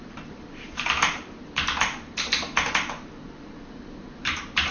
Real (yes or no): no